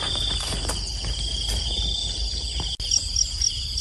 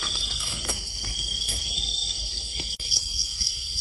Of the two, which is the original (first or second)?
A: first